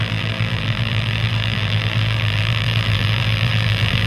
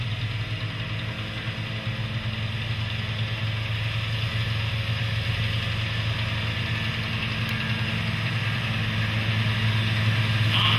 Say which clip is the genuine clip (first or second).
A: second